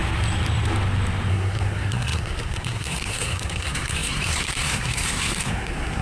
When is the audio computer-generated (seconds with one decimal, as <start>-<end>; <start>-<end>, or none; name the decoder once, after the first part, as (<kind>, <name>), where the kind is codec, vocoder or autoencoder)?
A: 1.3-6.0 (codec, SNAC)